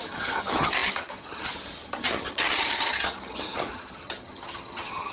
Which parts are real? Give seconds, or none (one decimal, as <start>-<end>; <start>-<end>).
none